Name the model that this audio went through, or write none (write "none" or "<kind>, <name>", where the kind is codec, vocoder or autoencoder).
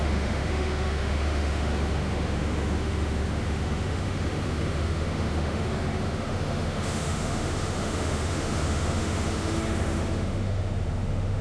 autoencoder, DAC-VAE